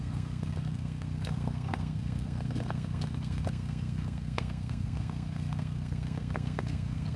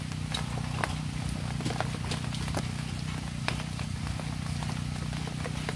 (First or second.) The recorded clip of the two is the second